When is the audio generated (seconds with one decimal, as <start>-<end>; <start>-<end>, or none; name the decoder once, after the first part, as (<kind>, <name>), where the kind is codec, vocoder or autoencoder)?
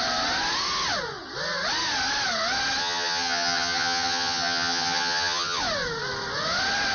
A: 2.8-5.6 (vocoder, HiFi-GAN)